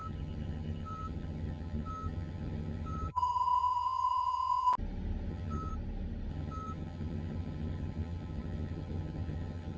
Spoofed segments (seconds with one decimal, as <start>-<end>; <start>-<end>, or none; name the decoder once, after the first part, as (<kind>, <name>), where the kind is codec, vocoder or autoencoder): 0.0-4.7 (vocoder, HiFi-GAN); 5.3-5.7; 6.3-9.8